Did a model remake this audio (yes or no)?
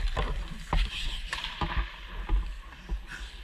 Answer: no